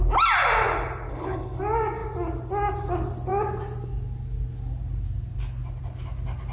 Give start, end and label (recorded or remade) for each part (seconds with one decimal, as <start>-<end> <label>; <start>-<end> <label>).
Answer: 0.0-1.1 recorded; 1.1-1.6 remade; 1.6-6.5 recorded